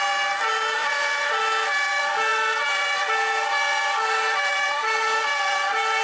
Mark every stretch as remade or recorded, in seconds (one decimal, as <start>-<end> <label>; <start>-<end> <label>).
0.0-6.0 recorded